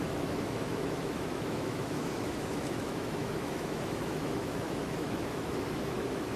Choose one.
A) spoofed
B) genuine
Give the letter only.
A